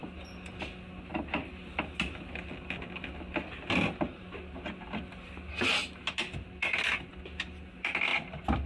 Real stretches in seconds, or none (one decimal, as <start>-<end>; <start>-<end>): 0.0-8.7